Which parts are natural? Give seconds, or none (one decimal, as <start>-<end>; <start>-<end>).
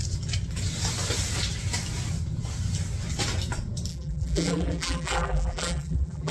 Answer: 0.0-3.9